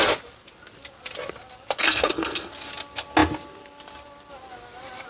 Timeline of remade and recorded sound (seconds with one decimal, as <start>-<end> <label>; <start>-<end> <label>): 0.0-1.8 recorded; 1.8-2.5 remade; 2.5-5.1 recorded